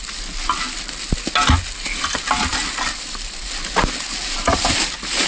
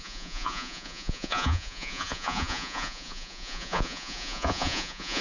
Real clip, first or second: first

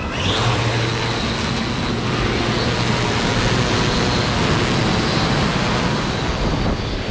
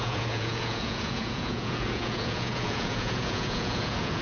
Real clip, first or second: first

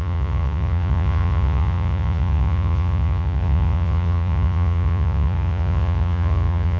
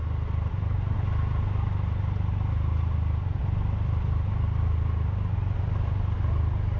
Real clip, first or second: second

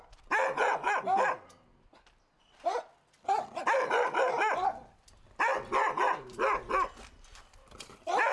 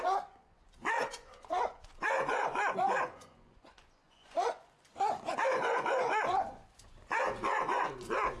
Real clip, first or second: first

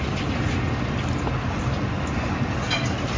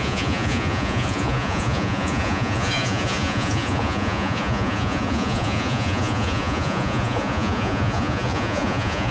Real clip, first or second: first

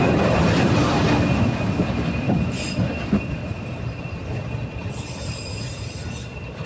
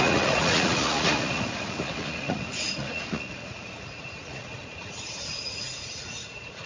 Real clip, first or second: first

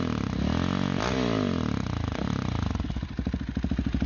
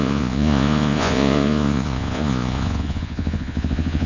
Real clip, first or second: first